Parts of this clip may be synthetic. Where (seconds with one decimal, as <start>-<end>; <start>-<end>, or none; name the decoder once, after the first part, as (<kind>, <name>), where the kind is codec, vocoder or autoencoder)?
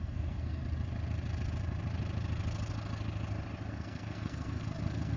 0.0-0.6 (codec, SNAC); 3.7-5.2